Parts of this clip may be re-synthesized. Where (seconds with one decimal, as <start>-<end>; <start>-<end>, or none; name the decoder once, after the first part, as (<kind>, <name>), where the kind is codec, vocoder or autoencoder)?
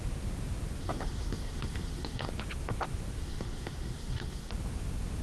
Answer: 0.8-2.3 (codec, SNAC); 3.2-4.5